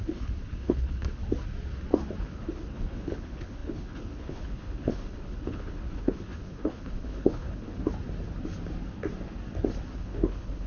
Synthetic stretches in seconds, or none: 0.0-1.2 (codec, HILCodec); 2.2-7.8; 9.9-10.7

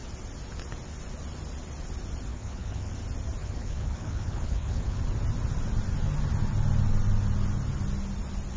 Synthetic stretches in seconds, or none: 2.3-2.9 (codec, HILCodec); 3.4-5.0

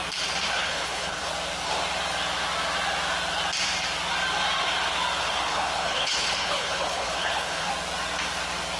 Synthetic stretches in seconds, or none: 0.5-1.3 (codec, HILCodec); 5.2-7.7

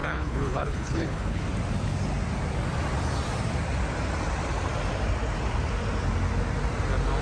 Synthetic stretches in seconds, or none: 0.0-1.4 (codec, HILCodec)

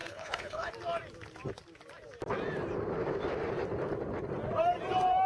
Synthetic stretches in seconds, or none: 0.0-0.7 (codec, HILCodec)